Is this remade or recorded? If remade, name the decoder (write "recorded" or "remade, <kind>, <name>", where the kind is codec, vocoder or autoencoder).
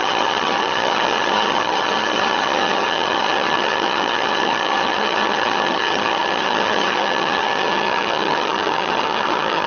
remade, vocoder, HiFi-GAN